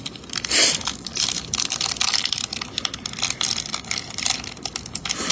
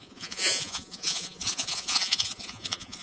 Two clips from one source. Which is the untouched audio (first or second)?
first